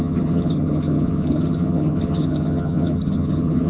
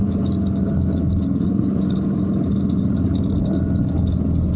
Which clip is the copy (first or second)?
first